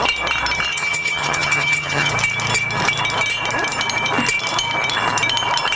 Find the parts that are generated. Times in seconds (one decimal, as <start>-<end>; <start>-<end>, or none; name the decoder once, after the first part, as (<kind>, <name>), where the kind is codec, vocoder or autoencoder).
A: 0.7-2.1 (vocoder, HiFi-GAN)

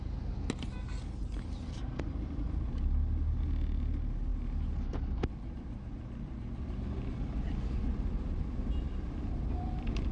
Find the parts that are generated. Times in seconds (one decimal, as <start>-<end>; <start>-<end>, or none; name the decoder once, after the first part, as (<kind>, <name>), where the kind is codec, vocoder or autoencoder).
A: none

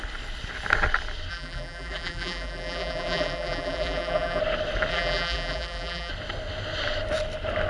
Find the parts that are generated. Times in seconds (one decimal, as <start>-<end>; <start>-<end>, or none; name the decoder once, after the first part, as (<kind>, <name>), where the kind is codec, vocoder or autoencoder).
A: 1.3-4.4 (vocoder, BigVGAN v2); 4.9-6.1

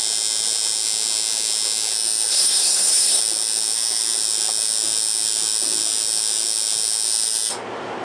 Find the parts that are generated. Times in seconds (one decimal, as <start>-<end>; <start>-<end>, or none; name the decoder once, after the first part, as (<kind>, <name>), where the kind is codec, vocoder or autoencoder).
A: 2.3-3.2 (codec, SNAC)